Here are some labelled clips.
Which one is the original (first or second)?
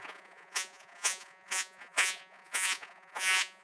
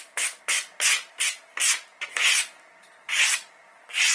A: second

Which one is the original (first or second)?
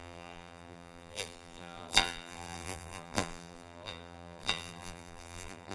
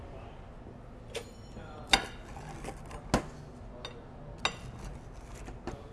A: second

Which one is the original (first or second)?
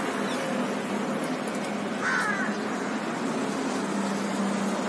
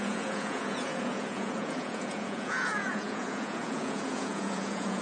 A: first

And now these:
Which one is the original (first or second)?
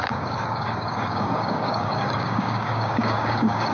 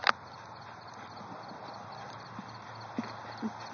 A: second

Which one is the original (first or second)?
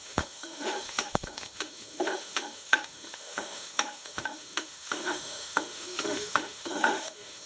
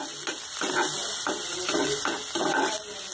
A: second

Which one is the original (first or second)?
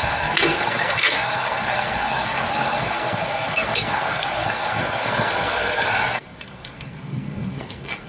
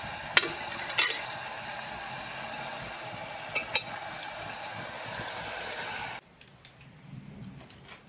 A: second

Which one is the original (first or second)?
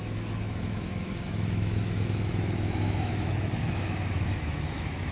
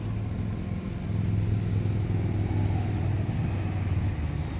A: second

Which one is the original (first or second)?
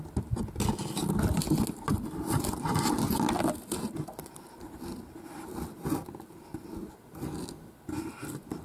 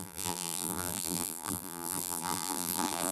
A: first